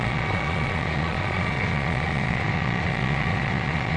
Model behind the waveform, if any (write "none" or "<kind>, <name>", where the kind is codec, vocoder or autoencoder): vocoder, Vocos